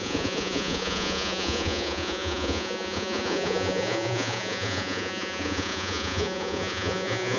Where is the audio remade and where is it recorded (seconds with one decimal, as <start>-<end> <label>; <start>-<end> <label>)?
0.0-7.4 remade